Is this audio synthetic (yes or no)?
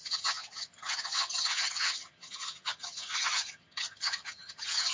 yes